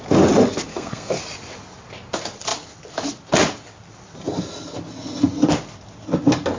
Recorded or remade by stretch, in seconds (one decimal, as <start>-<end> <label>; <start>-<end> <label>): 0.0-0.7 recorded; 0.7-1.2 remade; 1.2-6.6 recorded